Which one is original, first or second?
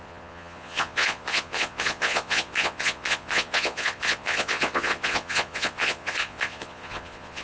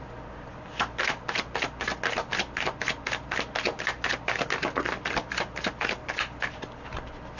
second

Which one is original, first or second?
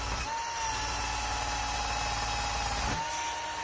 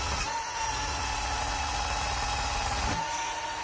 first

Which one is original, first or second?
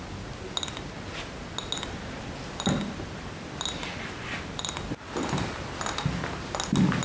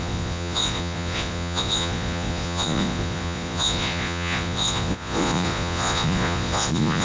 first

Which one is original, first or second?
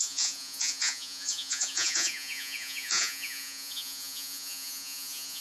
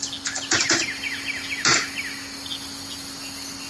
second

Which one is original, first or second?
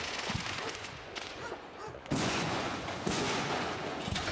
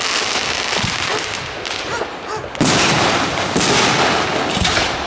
second